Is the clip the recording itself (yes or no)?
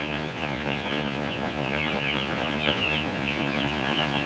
no